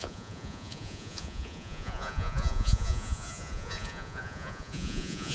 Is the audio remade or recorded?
remade